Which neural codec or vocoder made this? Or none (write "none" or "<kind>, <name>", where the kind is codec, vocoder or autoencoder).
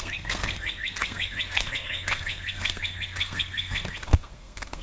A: codec, SNAC